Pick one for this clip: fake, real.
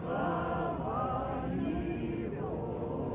real